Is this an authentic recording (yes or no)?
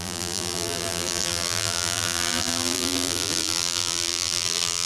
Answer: no